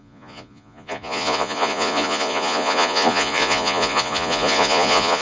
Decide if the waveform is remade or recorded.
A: remade